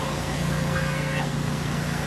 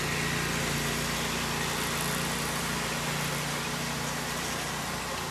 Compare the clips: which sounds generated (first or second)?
first